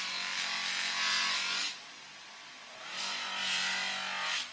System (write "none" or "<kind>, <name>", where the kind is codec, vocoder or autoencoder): none